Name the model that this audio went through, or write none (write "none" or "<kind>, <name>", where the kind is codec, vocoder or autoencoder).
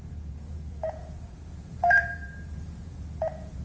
vocoder, Vocos